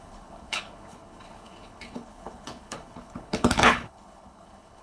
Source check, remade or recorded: remade